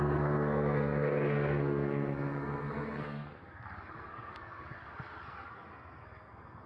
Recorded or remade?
remade